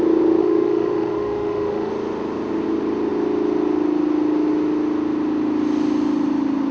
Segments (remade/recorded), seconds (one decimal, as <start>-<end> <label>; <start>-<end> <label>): 0.0-0.4 recorded; 0.4-1.9 remade; 1.9-6.7 recorded